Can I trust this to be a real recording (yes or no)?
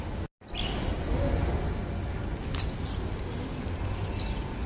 yes